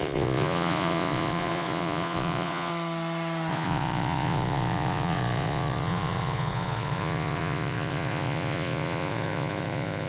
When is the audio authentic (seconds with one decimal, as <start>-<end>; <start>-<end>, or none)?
2.7-3.5